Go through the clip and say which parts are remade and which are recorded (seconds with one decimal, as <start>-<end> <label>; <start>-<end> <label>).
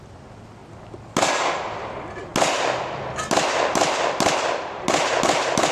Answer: 0.0-5.7 recorded